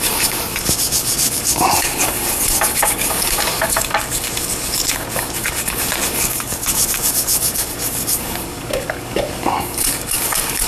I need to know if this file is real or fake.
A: fake